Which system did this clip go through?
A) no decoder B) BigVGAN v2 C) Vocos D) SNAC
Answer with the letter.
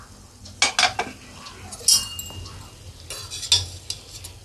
A